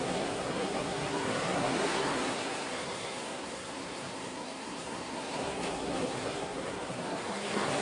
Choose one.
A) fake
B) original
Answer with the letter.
A